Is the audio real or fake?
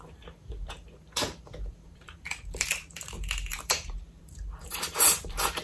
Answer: fake